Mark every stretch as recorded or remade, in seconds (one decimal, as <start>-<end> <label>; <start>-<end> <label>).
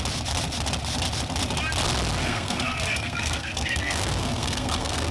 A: 0.0-2.2 recorded; 2.2-5.1 remade